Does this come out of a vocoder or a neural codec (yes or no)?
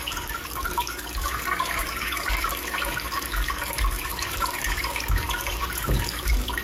yes